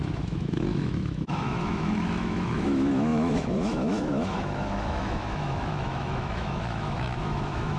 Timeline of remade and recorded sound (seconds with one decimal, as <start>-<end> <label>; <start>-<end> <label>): 0.0-7.8 remade